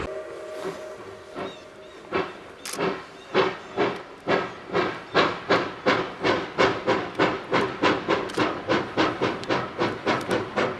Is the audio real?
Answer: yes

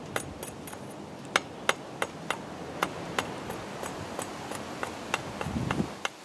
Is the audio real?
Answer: yes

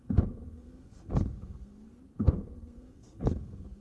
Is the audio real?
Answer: no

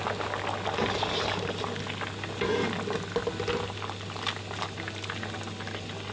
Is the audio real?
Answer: yes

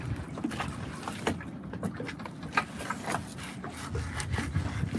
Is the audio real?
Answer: yes